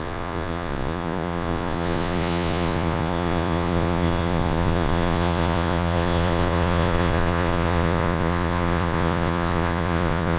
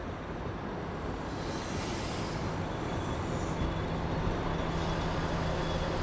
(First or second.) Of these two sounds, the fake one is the first